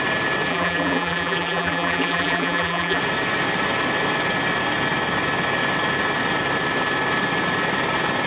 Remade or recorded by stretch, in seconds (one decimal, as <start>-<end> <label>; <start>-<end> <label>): 0.0-0.5 recorded; 0.5-3.0 remade; 3.0-8.3 recorded